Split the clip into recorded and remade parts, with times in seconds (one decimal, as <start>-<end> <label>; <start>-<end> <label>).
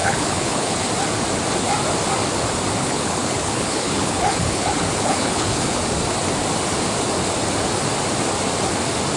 0.0-0.9 remade; 0.9-2.8 recorded; 2.8-5.8 remade; 5.8-9.2 recorded